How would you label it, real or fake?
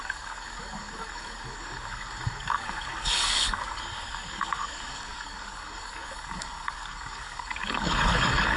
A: fake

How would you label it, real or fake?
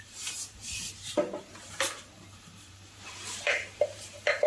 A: fake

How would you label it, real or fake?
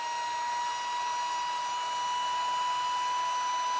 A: real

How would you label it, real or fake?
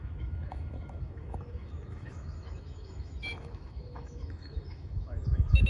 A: fake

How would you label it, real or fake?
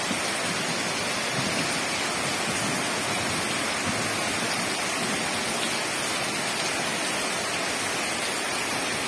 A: real